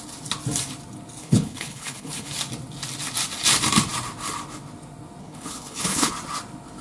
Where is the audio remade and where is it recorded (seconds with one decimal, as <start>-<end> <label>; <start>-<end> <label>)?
0.0-1.2 recorded; 1.2-2.3 remade; 2.3-5.2 recorded; 5.2-6.1 remade; 6.1-6.8 recorded